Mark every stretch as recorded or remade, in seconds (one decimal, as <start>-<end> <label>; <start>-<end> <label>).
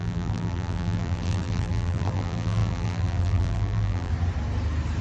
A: 0.0-4.1 remade; 4.1-5.0 recorded